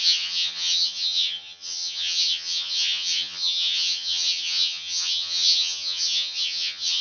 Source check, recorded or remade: remade